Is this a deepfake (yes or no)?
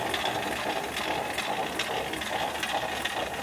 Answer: no